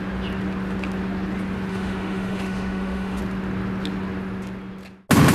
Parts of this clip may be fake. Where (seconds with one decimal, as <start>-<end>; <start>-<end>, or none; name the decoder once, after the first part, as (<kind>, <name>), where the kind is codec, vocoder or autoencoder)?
1.7-3.2 (autoencoder, DAC-VAE)